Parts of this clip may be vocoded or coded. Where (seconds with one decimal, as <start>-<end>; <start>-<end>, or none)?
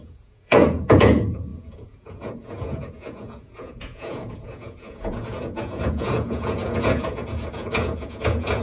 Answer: 0.0-8.6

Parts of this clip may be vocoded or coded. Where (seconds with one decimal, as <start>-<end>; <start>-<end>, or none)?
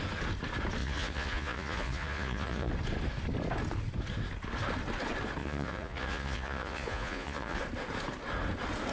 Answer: 0.8-2.7; 5.4-7.6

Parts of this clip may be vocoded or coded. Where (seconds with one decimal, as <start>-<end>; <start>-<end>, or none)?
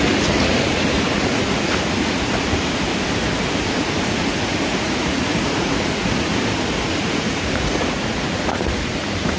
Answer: 0.0-2.9; 3.6-6.3; 6.9-9.4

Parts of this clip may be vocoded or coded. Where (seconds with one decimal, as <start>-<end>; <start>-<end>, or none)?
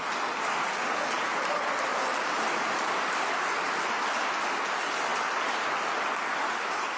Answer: none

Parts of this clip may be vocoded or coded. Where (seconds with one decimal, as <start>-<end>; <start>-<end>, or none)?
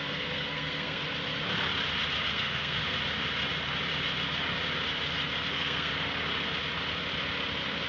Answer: 0.0-1.0; 2.3-2.8; 5.5-5.9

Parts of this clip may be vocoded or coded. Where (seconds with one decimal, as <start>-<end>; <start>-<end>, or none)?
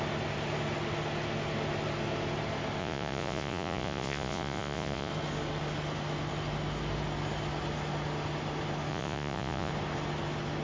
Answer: 2.8-5.1; 8.9-9.7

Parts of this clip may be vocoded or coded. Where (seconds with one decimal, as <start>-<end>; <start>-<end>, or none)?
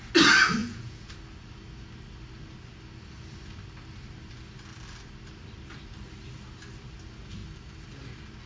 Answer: 0.6-1.1